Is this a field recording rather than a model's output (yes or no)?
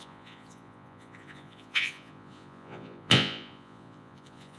no